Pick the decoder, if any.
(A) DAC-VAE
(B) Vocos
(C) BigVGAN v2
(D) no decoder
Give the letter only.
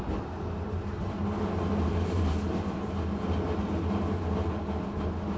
D